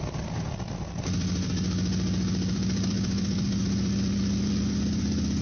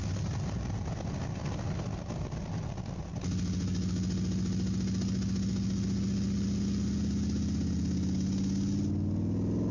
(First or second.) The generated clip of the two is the first